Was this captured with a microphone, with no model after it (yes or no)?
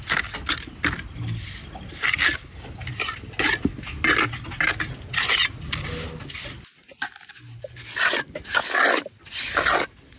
yes